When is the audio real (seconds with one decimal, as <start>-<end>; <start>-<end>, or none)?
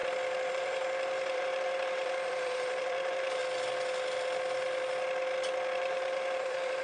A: 0.0-0.5; 3.4-5.8